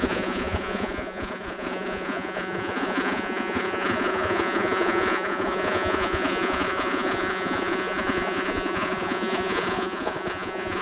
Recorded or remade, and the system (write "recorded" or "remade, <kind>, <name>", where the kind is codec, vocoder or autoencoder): remade, vocoder, Vocos